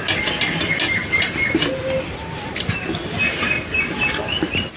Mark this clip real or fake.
real